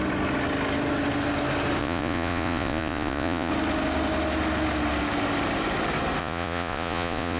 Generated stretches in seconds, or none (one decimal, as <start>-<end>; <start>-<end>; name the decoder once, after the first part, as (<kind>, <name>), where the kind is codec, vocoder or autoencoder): 1.8-3.5 (vocoder, Vocos); 6.2-7.4